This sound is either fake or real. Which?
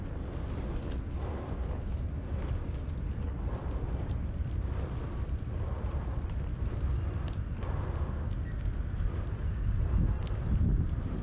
real